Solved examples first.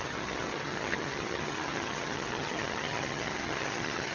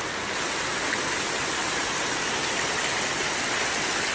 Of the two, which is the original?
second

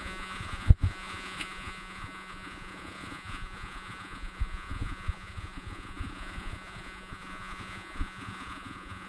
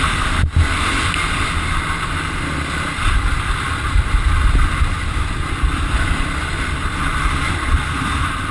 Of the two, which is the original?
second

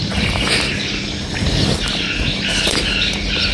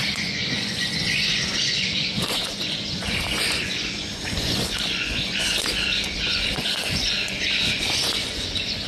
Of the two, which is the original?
first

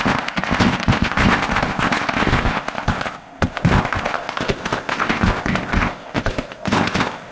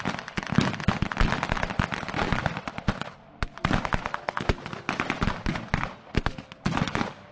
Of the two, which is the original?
second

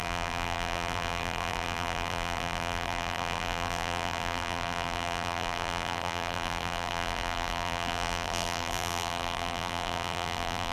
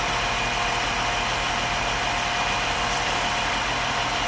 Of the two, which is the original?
second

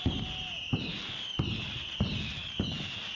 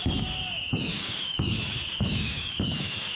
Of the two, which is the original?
first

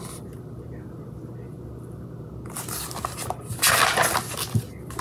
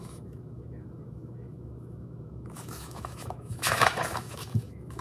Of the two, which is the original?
first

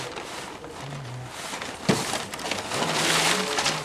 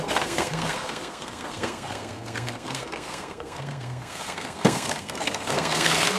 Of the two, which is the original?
first